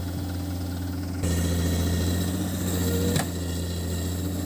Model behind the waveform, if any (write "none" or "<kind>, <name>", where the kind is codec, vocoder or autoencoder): none